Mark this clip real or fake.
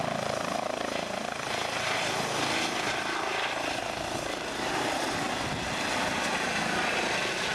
real